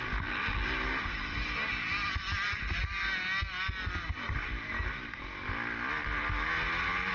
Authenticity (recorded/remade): recorded